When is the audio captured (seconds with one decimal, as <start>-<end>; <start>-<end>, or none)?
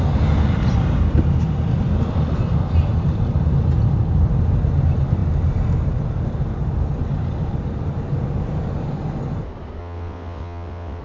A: 0.0-9.8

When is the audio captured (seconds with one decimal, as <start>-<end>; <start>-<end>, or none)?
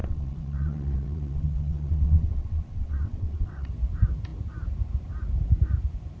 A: 3.7-6.2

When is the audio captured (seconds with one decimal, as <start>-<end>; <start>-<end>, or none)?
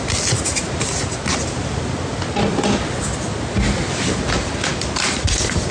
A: 0.0-5.7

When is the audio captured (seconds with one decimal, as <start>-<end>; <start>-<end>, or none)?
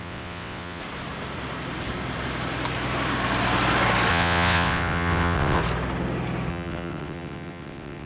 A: 0.8-4.1; 5.6-6.5